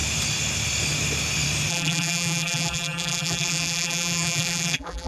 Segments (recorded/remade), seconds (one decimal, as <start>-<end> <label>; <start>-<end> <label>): 0.0-1.7 recorded; 1.7-5.1 remade